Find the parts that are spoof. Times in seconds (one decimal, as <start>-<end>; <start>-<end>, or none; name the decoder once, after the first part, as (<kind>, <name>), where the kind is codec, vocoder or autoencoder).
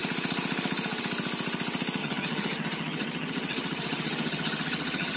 2.0-5.2 (vocoder, HiFi-GAN)